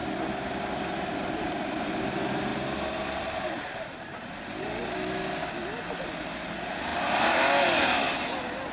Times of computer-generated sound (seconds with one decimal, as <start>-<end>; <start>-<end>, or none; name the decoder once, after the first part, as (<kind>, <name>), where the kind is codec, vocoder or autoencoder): 0.0-2.0 (vocoder, BigVGAN v2); 2.5-6.5